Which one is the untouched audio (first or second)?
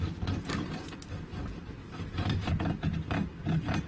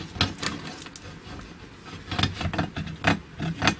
second